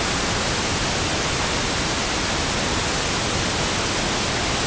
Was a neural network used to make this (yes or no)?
no